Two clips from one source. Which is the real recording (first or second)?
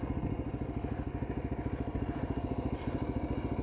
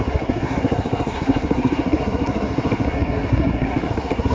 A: first